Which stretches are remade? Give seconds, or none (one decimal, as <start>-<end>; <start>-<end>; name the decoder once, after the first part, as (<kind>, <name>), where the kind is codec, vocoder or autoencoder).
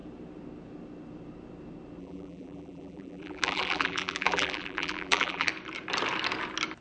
2.0-5.5 (vocoder, BigVGAN v2)